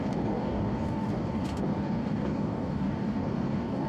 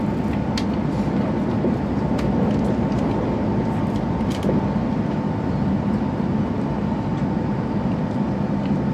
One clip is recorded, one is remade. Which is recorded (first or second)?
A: second